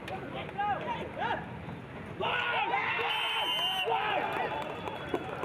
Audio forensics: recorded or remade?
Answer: recorded